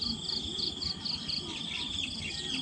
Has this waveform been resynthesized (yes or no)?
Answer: no